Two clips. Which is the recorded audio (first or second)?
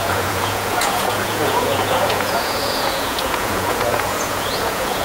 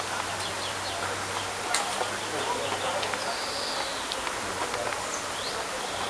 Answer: second